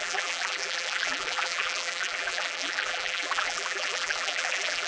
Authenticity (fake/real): fake